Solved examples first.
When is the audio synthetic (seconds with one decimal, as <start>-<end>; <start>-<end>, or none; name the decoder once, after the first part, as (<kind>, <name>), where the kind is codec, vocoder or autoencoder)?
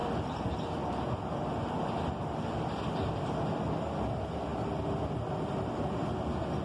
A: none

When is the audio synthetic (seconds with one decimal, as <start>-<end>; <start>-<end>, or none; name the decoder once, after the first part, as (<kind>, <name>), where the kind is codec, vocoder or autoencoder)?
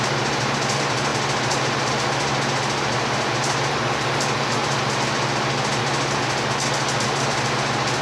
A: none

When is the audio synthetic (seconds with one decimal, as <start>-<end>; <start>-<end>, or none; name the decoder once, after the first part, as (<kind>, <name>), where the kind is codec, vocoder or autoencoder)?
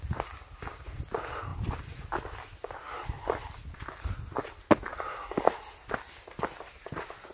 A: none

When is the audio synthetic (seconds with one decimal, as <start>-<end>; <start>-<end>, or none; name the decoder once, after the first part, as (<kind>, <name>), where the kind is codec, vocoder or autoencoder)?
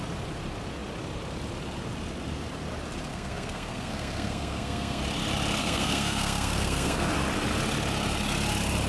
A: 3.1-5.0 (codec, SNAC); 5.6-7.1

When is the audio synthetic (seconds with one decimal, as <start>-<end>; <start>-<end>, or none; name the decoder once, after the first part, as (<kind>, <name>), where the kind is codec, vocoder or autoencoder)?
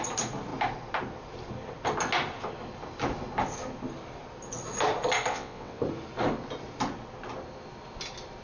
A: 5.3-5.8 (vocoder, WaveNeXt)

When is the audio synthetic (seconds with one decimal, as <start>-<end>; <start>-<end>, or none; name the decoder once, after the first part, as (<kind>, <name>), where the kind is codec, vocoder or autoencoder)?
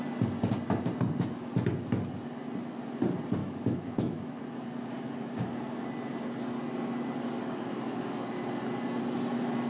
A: 3.4-4.4 (autoencoder, DAC-VAE)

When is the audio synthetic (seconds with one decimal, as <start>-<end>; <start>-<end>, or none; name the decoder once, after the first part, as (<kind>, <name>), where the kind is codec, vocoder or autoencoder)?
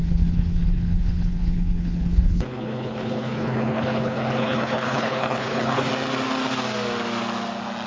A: 0.0-5.9 (codec, HILCodec)